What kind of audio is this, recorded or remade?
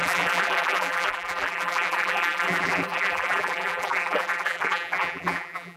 remade